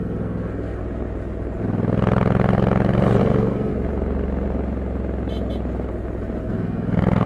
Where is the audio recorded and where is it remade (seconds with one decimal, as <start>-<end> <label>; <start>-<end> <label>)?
0.0-0.8 remade; 0.8-3.2 recorded; 3.2-3.7 remade; 3.7-6.4 recorded; 6.4-7.3 remade